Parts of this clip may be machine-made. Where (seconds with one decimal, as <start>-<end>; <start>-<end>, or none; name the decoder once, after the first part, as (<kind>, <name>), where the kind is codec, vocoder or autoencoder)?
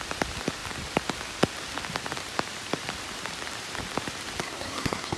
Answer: 4.4-5.2 (codec, SNAC)